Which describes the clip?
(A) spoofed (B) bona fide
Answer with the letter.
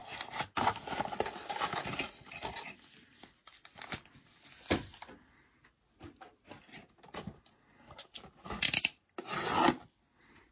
B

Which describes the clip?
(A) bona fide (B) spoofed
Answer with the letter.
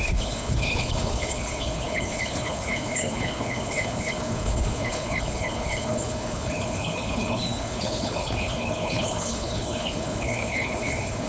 B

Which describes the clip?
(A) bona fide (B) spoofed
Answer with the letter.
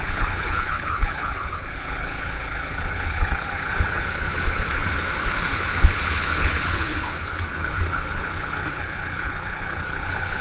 B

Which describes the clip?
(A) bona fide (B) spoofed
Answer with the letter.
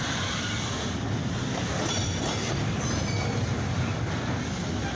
A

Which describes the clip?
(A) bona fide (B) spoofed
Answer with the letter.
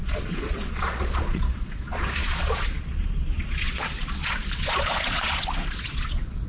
B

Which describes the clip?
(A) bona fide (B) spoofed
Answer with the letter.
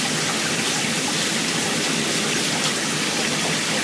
A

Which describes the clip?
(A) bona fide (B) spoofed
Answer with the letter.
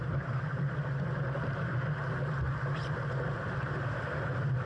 A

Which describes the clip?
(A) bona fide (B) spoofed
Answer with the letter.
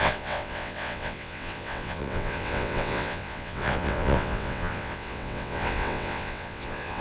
B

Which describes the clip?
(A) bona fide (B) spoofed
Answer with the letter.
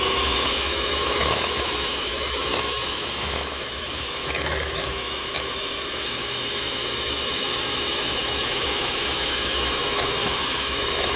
B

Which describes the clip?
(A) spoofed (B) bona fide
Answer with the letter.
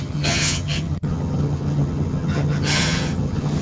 A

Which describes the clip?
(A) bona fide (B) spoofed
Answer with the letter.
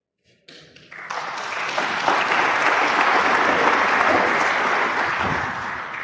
A